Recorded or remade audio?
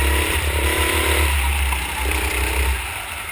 recorded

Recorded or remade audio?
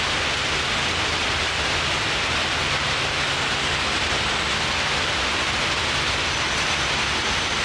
recorded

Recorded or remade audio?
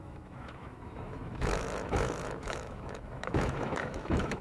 remade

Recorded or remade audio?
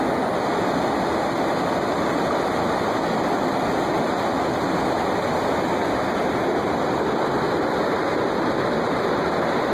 recorded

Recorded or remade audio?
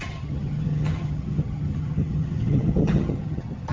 remade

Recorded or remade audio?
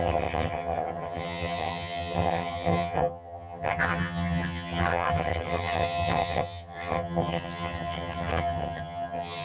remade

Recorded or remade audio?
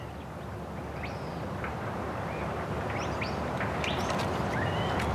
recorded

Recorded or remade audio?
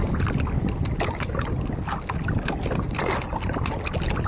recorded